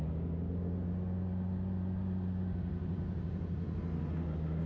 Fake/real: real